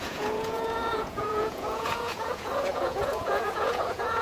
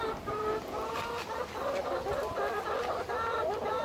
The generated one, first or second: first